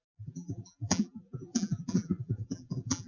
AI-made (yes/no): yes